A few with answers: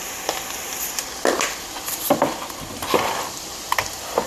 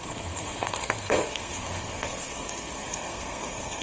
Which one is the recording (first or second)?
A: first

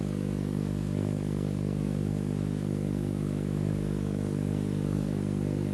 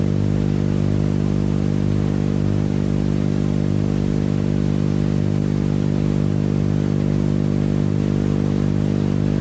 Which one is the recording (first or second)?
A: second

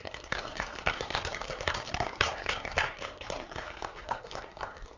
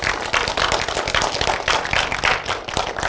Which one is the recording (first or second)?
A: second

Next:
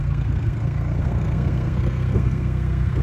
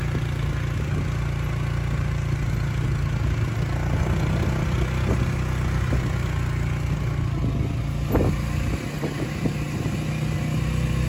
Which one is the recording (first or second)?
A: second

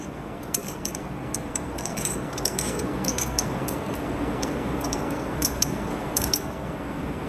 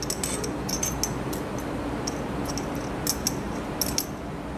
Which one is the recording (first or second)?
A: second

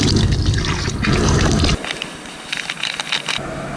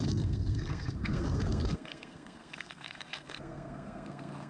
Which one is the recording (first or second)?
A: first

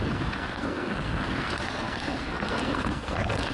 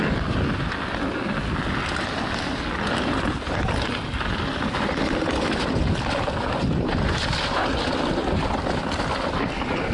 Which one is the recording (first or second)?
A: second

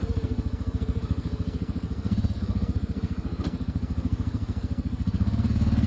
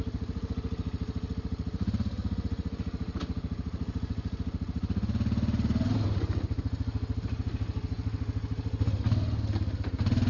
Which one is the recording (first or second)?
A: second